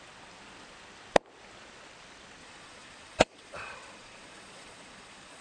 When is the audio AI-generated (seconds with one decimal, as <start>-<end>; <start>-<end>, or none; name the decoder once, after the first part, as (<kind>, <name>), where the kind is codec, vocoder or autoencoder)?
2.4-5.4 (vocoder, Vocos)